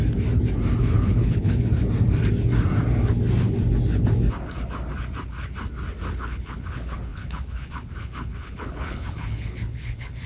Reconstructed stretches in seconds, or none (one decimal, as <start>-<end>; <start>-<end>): 0.8-1.7; 6.1-10.3